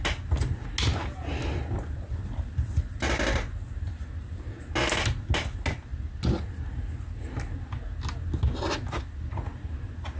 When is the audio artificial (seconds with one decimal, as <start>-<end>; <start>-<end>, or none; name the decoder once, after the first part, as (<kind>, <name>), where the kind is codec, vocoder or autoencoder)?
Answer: none